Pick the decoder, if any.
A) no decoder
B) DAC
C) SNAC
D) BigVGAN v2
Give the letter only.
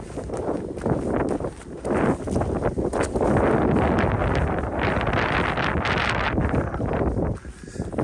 A